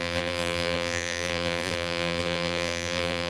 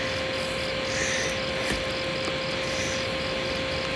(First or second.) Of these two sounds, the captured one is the second